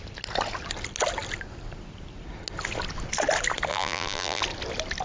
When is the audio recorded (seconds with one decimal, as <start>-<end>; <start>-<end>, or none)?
0.0-3.7; 4.4-5.0